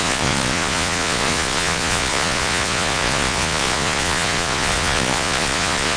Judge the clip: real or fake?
fake